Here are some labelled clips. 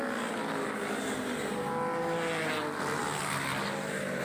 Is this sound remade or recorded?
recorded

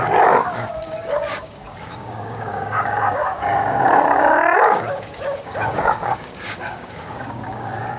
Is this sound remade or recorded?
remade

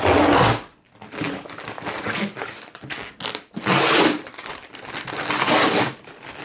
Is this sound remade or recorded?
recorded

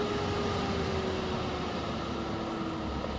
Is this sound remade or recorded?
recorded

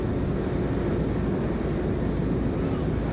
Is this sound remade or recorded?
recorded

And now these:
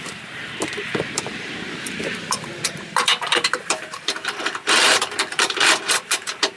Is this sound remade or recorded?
remade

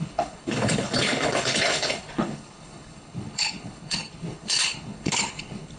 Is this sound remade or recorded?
remade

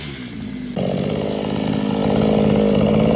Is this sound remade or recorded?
recorded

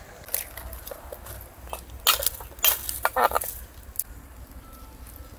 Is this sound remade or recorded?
recorded